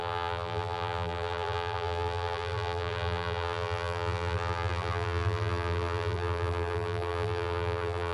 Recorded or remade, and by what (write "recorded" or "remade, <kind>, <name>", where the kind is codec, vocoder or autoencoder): remade, vocoder, BigVGAN v2